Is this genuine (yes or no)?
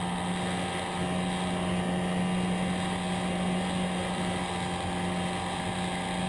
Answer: yes